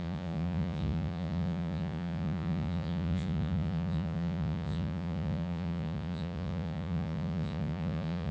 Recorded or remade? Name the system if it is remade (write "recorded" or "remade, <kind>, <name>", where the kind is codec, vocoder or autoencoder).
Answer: remade, vocoder, Vocos